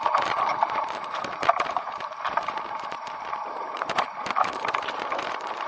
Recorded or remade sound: remade